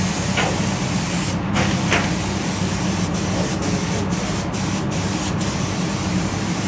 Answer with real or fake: real